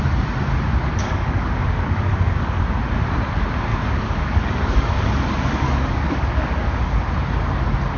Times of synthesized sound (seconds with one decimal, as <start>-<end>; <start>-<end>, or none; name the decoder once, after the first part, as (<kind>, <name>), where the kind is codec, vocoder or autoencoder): 1.0-2.6 (codec, DAC); 3.7-7.1